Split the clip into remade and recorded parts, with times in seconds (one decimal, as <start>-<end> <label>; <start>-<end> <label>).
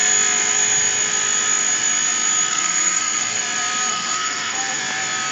0.0-2.5 recorded; 2.5-3.4 remade; 3.4-3.9 recorded; 3.9-4.8 remade; 4.8-5.3 recorded